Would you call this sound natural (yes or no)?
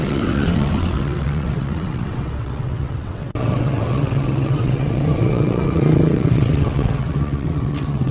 no